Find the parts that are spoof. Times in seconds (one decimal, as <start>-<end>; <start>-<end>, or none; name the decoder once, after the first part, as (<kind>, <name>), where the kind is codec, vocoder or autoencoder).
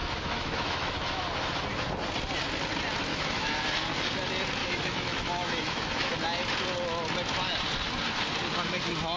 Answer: 0.0-1.2 (autoencoder, DAC-VAE); 3.1-3.6; 4.6-6.1